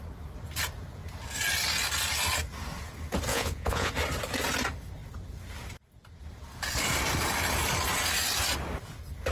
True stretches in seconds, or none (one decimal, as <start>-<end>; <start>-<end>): 0.0-3.3; 3.9-9.3